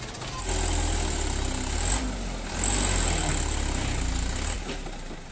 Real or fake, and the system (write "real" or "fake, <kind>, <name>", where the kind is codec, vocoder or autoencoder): real